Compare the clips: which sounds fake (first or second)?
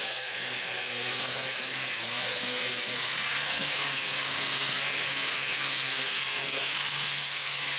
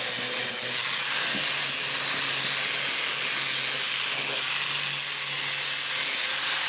first